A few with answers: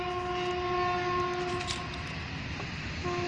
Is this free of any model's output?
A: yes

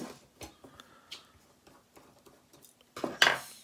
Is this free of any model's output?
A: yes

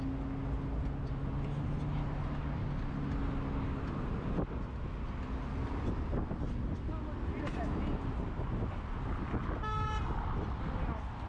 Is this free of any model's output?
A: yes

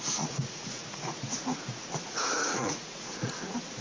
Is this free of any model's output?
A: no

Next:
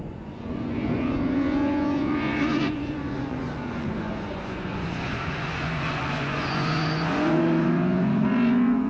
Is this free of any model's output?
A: no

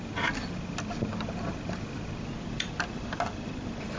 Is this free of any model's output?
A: yes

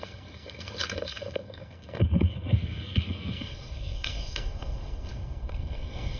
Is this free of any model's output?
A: no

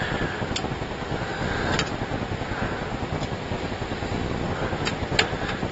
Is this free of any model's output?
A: yes